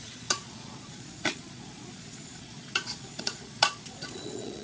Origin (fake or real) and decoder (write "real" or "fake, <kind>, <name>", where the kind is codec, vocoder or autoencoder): fake, vocoder, Vocos